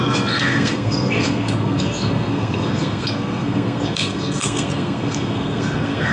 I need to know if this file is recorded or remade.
remade